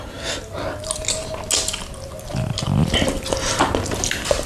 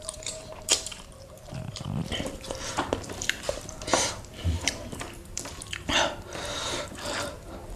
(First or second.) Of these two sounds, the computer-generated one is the second